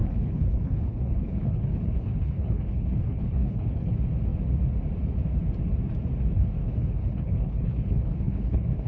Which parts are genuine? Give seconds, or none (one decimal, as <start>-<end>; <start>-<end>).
3.9-6.6